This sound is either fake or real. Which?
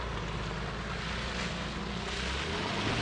real